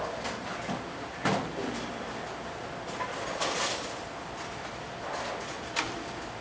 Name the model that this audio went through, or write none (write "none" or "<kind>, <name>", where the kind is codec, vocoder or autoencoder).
none